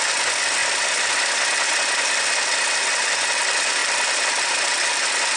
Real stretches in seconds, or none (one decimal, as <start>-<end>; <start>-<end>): 0.0-0.6; 3.3-3.8